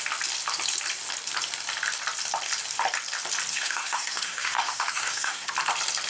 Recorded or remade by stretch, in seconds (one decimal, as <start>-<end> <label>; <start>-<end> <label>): 0.0-3.5 recorded; 3.5-5.5 remade; 5.5-6.1 recorded

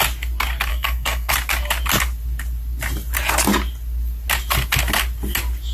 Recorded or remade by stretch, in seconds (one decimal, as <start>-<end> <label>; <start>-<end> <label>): 0.0-0.7 recorded; 0.7-1.3 remade; 1.3-5.7 recorded

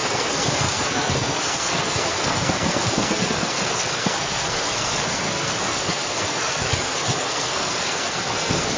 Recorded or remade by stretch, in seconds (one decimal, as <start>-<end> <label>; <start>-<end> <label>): 0.0-8.8 remade

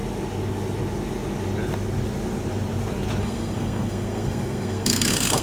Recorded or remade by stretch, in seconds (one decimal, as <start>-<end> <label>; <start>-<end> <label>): 0.0-3.2 recorded; 3.2-5.4 remade

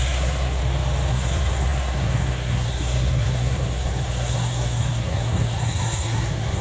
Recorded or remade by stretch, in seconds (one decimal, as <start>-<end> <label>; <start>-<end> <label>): 0.0-0.6 remade; 0.6-1.1 recorded; 1.1-6.6 remade

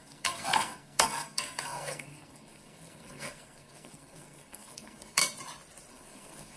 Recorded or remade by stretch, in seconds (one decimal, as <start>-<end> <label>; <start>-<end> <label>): 0.0-5.2 remade; 5.2-5.9 recorded; 5.9-6.6 remade

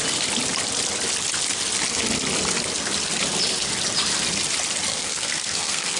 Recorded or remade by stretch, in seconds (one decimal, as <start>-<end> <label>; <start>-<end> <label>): 0.0-4.9 recorded; 4.9-6.0 remade

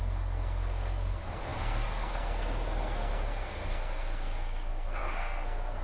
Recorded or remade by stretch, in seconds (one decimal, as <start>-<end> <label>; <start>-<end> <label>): 0.0-5.8 remade